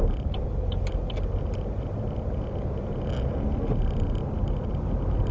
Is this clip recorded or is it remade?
recorded